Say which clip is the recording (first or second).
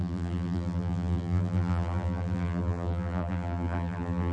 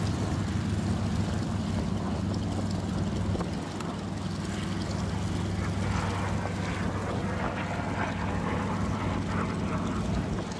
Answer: second